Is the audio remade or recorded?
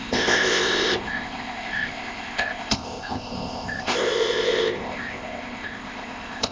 remade